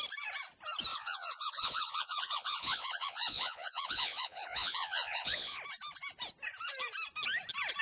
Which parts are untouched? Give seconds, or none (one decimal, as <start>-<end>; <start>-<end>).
0.0-0.9; 5.6-7.8